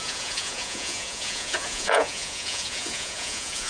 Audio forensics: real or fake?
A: fake